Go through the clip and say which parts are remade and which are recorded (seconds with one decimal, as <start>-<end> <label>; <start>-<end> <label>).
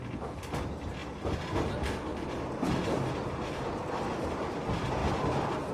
0.0-1.0 recorded; 1.0-1.7 remade; 1.7-2.1 recorded; 2.1-2.8 remade; 2.8-3.8 recorded; 3.8-4.4 remade; 4.4-5.0 recorded; 5.0-5.7 remade